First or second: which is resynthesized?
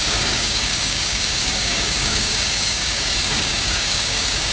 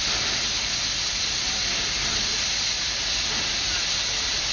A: first